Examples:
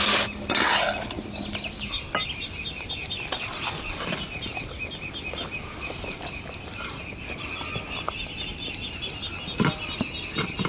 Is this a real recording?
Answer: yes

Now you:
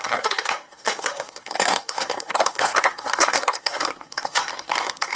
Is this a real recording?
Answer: no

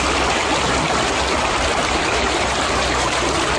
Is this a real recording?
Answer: yes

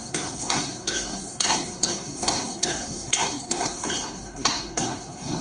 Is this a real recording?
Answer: no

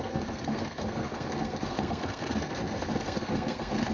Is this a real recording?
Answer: no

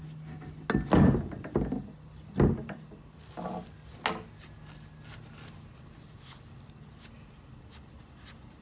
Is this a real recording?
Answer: yes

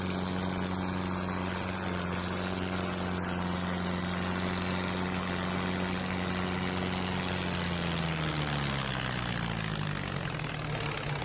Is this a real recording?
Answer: yes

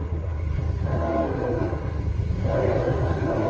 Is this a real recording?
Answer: no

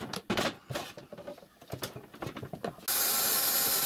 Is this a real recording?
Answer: yes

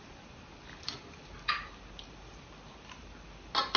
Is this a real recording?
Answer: yes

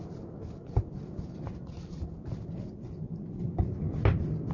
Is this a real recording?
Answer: yes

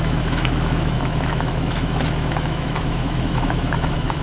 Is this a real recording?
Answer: no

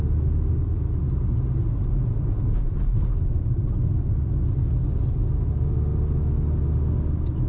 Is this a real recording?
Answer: yes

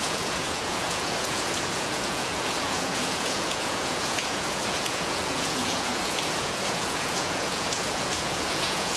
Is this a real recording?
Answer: no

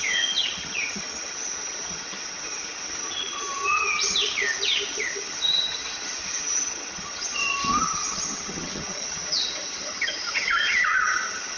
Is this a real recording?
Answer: no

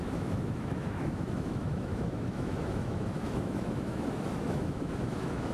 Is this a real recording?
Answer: no